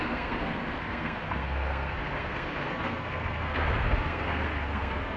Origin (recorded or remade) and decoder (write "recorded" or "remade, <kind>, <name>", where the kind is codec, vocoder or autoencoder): remade, codec, SNAC